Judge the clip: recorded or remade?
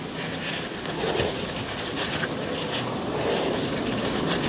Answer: recorded